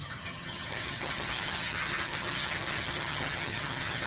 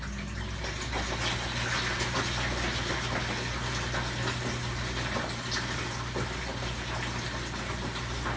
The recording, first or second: second